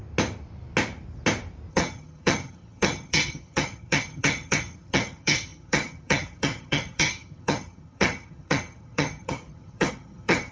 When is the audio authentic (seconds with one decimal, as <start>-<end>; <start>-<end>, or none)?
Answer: 0.0-1.7